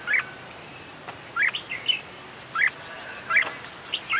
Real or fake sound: real